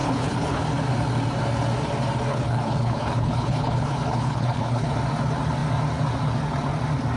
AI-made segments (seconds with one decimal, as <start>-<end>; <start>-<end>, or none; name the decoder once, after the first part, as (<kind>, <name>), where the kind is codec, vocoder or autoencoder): 0.0-0.6 (codec, HILCodec); 2.3-4.9

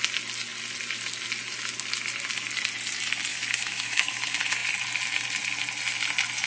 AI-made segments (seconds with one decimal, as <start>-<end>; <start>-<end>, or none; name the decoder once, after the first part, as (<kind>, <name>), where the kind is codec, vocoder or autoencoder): 3.3-4.1 (autoencoder, DAC-VAE)

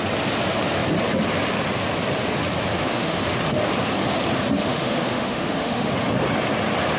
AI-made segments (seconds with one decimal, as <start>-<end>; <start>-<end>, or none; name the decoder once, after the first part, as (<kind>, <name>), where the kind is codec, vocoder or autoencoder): 2.7-3.2 (autoencoder, DAC-VAE); 4.6-5.9

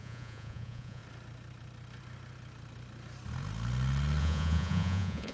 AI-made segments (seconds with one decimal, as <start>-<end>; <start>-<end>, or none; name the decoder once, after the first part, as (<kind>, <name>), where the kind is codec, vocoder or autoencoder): 0.0-1.0 (vocoder, Vocos); 4.2-5.3

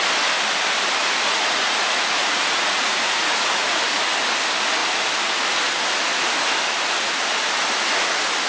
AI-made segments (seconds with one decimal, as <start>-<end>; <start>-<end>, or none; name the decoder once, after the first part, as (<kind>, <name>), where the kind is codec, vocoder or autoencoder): 1.0-4.0 (vocoder, Vocos)

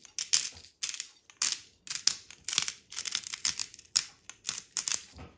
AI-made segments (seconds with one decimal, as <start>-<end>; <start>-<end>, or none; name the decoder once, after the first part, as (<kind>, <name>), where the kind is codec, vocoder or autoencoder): none